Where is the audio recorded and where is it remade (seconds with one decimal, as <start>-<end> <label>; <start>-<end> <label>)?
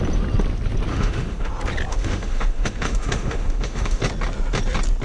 0.0-0.9 recorded; 0.9-1.5 remade; 1.5-1.9 recorded; 1.9-4.0 remade; 4.0-5.0 recorded